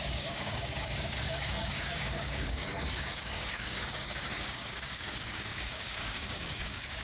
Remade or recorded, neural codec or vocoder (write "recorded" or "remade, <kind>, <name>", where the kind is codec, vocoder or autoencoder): remade, codec, DAC